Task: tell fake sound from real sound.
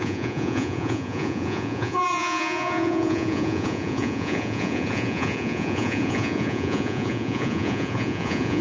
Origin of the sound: fake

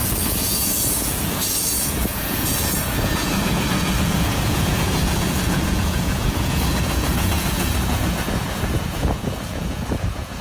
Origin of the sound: fake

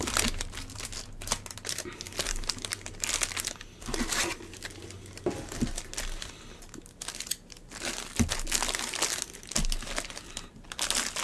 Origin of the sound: real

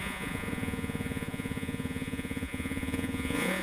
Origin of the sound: fake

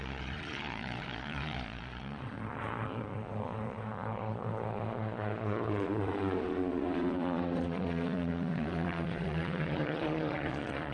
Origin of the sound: fake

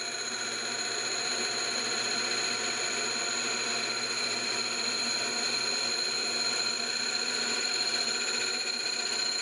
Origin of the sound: real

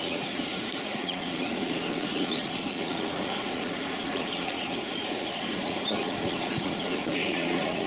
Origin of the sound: fake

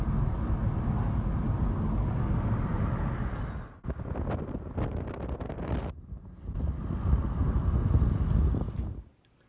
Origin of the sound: real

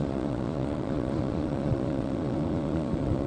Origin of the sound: fake